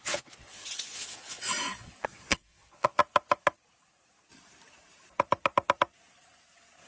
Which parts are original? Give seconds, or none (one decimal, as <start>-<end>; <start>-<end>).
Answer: 3.0-6.9